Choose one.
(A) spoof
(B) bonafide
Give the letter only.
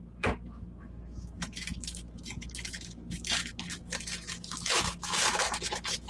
A